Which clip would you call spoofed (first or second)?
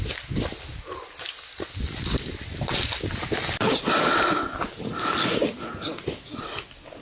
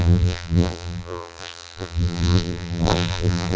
second